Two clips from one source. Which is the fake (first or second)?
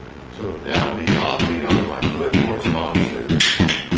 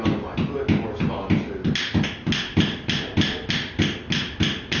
first